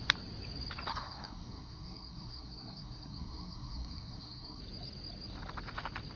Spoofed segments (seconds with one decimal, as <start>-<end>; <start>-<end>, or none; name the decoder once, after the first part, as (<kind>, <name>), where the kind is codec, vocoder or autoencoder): 0.9-4.6 (codec, SNAC)